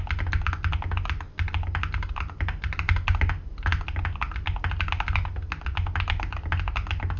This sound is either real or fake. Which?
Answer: real